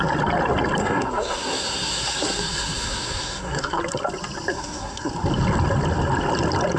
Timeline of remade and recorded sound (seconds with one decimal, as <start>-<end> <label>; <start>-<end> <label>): 0.0-0.8 recorded; 0.8-3.8 remade; 3.8-4.5 recorded; 4.5-5.1 remade; 5.1-6.8 recorded